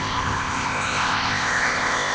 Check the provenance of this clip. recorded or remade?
remade